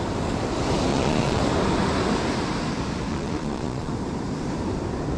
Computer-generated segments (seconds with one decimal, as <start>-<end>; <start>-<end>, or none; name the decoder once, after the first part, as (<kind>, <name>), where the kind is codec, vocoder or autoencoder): 0.9-1.4 (vocoder, Vocos); 3.1-3.9